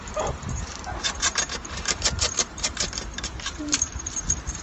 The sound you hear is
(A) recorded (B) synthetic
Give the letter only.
B